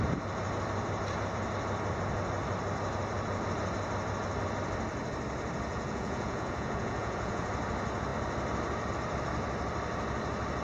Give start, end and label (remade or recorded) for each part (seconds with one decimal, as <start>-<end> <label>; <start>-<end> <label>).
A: 0.0-5.7 recorded; 5.7-7.5 remade; 7.5-10.6 recorded